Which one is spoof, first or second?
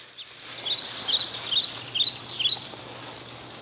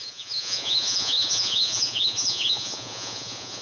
second